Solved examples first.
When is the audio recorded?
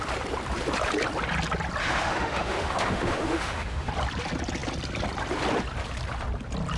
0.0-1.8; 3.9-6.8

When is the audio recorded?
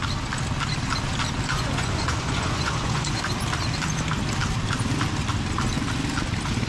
0.0-1.5; 3.2-6.7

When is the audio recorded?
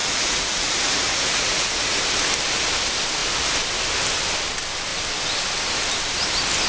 2.0-6.7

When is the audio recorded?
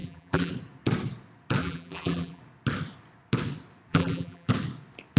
0.5-1.6; 2.4-3.9; 4.5-5.2